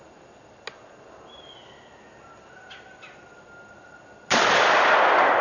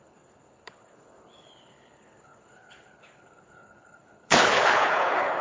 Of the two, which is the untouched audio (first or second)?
first